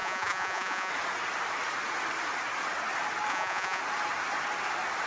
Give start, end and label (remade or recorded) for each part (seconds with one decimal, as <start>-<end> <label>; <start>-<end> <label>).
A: 0.0-0.9 remade; 0.9-3.3 recorded; 3.3-3.8 remade; 3.8-5.1 recorded